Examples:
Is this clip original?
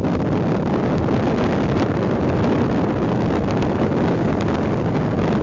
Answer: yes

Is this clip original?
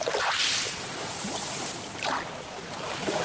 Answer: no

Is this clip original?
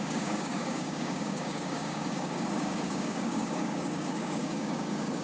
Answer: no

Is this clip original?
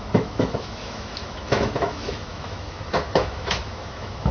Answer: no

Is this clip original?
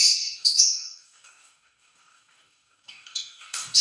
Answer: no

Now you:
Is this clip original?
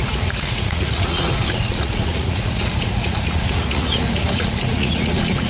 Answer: no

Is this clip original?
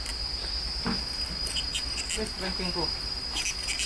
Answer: yes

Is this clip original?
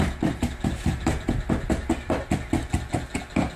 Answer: yes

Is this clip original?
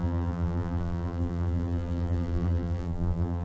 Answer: no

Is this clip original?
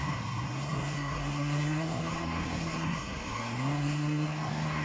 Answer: no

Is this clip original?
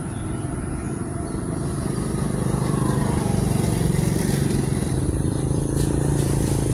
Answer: yes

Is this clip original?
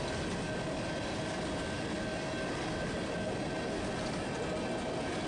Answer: yes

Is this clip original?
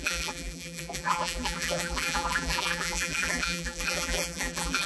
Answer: no